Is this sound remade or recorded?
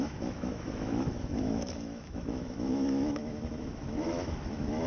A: remade